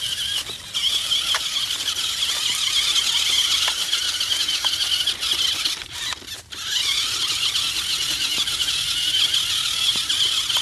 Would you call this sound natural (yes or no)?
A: yes